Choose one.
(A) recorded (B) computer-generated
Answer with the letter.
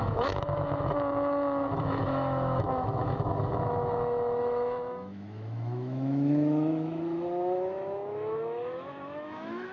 B